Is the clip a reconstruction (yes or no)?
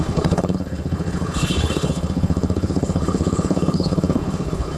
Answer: yes